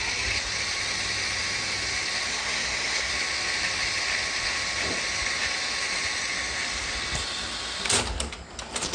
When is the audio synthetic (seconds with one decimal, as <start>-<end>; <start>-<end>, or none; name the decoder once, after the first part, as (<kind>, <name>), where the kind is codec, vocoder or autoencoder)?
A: 2.3-3.1 (codec, SNAC)